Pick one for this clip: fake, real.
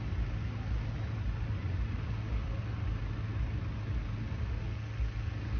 real